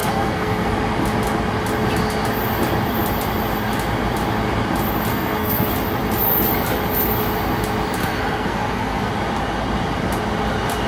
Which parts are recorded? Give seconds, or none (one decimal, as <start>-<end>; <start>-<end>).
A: 0.7-5.1; 5.7-8.0; 9.1-10.9

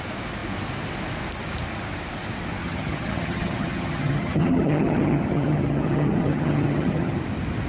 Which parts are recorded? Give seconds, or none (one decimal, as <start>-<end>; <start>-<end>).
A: 0.0-2.6; 7.2-7.7

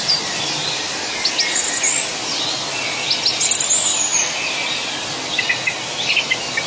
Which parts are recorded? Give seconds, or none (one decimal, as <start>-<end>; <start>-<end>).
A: 0.0-6.7

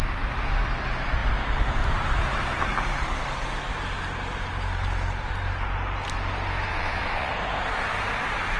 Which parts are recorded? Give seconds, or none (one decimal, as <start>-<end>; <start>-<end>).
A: 0.0-6.7; 7.3-8.6

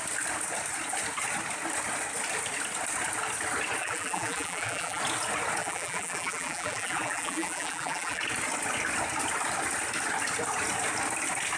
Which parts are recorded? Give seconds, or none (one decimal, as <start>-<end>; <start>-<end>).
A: 0.0-3.8; 5.0-5.6; 8.2-11.6

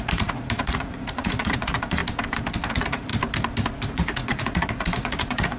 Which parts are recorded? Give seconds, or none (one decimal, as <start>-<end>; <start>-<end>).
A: 2.0-2.7; 3.1-3.9